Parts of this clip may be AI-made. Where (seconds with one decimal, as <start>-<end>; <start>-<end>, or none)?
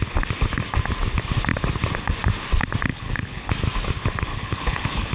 2.9-3.5; 4.3-5.1